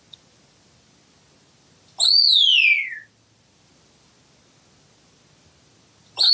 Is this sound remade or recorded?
recorded